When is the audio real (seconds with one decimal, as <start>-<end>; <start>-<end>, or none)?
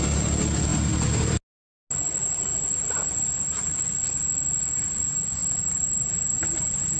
0.0-7.0